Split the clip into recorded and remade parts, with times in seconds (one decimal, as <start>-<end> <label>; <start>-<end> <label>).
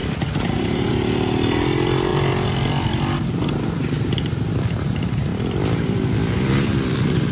0.0-0.9 remade; 0.9-2.1 recorded; 2.1-3.5 remade; 3.5-5.3 recorded; 5.3-7.3 remade